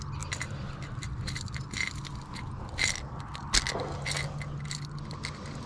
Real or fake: real